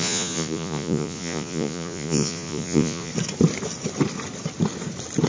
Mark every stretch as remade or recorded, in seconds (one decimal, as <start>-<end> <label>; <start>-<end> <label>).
0.0-3.1 remade; 3.1-5.3 recorded